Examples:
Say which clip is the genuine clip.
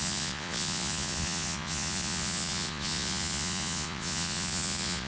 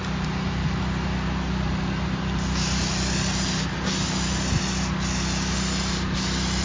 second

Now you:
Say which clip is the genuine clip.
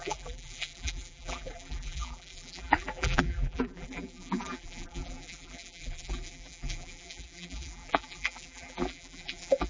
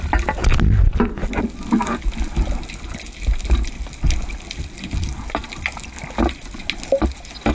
second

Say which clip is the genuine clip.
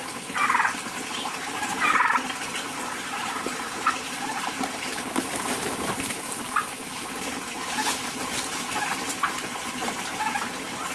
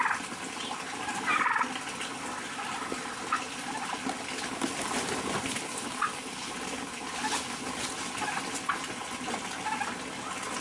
second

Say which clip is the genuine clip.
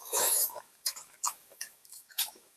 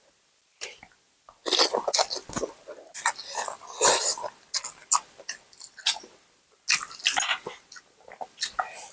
second